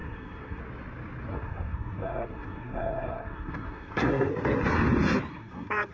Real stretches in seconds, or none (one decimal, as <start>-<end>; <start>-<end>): 0.6-1.3; 4.3-5.3